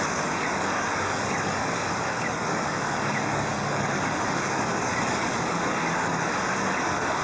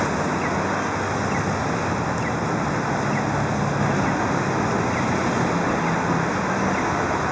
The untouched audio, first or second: second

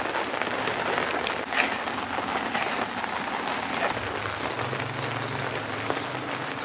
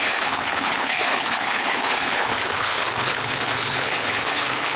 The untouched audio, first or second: first